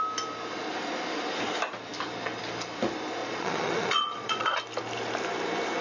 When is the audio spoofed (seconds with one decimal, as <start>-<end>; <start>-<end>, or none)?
3.2-4.6